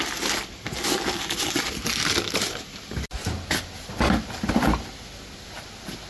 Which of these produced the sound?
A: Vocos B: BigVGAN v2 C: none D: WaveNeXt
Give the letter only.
C